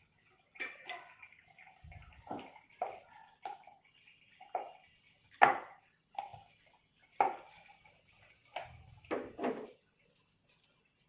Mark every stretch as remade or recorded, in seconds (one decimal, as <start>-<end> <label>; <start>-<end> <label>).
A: 0.0-11.1 recorded